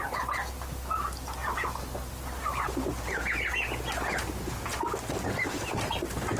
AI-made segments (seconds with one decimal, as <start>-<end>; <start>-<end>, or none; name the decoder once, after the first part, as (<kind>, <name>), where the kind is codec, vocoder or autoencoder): none